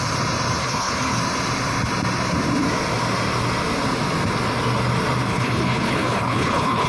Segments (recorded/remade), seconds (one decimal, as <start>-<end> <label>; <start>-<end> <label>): 0.0-0.6 recorded; 0.6-1.2 remade; 1.2-5.3 recorded; 5.3-6.9 remade